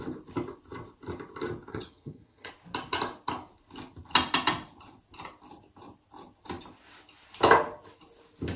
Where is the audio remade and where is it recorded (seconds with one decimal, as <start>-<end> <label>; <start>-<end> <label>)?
0.0-1.7 recorded; 1.7-2.5 remade; 2.5-8.6 recorded